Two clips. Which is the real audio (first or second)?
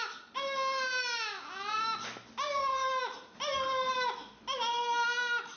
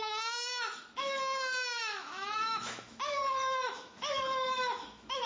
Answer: first